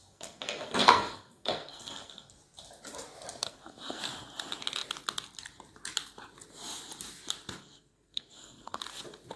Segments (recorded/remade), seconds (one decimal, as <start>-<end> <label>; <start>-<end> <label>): 0.0-2.4 remade; 2.4-3.4 recorded; 3.4-4.0 remade; 4.0-7.6 recorded; 7.6-8.8 remade; 8.8-9.4 recorded